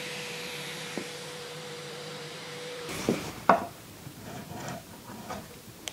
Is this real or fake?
fake